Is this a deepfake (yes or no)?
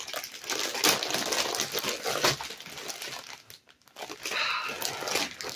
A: no